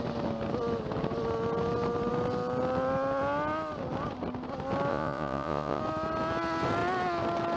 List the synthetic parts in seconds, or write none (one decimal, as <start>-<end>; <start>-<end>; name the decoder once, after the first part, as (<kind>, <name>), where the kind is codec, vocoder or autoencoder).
4.9-5.8 (vocoder, Vocos)